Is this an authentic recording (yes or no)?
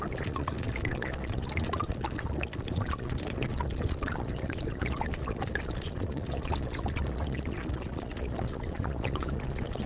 no